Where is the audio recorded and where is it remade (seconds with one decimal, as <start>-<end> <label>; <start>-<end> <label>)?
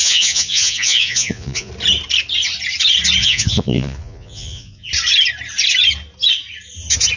0.0-1.7 remade; 1.7-3.2 recorded; 3.2-4.9 remade; 4.9-7.2 recorded